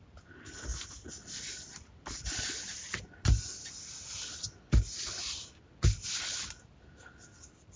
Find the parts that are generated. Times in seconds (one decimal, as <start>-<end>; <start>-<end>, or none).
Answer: none